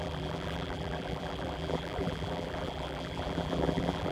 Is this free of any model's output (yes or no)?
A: no